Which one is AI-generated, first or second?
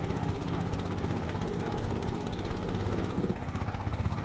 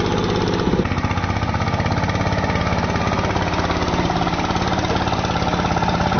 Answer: first